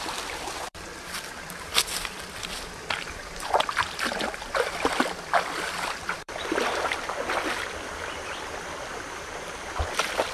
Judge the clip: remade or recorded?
remade